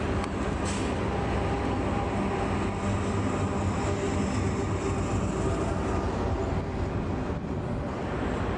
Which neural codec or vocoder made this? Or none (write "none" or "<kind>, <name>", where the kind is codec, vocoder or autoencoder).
none